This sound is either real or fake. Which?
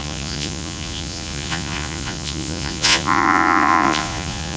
fake